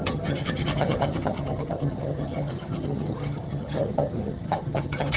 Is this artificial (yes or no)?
yes